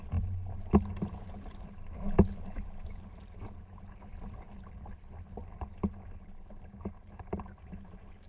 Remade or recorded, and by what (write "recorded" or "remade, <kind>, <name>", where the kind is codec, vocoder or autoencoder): recorded